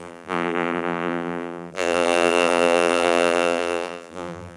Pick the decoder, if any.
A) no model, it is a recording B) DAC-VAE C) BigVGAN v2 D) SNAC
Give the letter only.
C